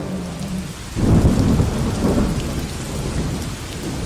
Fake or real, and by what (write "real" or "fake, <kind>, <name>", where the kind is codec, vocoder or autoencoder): real